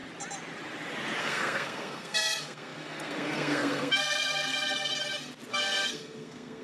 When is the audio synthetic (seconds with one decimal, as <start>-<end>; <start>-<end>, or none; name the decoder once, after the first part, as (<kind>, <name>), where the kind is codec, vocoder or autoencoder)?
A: 1.2-4.9 (codec, SNAC); 5.5-6.6